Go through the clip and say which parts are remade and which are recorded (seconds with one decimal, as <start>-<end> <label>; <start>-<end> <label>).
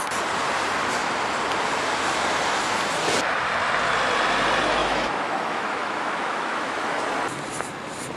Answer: 0.0-4.8 recorded; 4.8-7.0 remade; 7.0-8.2 recorded